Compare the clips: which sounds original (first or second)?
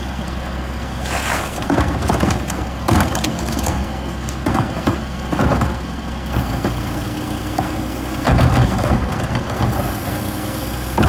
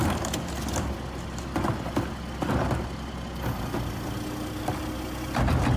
second